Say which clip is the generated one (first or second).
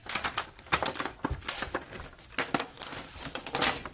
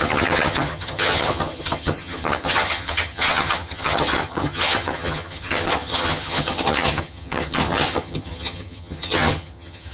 second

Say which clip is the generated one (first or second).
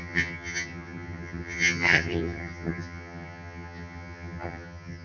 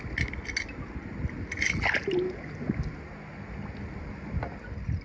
first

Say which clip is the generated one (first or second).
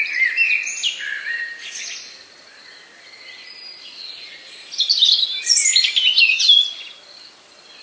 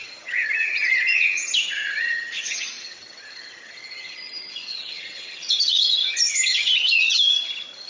second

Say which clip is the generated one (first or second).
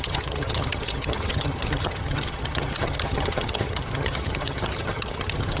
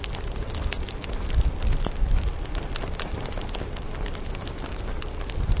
first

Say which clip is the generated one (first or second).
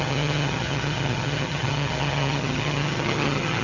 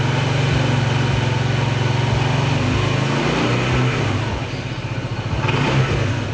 first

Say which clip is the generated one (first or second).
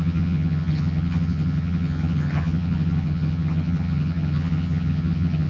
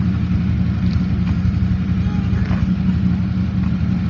first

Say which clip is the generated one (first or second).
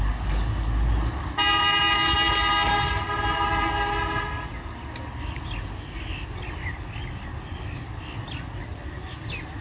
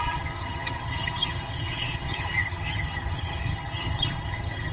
second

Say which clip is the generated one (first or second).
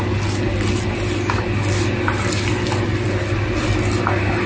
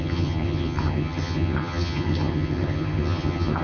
second